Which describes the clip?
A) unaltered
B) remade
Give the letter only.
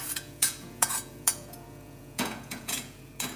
B